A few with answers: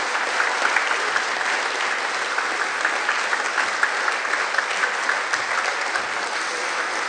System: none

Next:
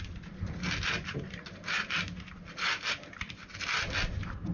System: none